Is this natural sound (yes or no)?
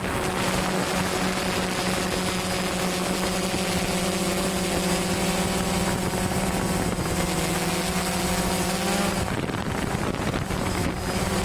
yes